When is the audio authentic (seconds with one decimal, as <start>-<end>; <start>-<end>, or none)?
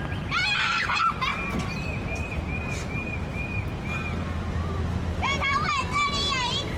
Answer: 0.0-6.8